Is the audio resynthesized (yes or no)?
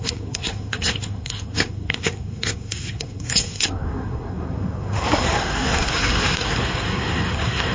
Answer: yes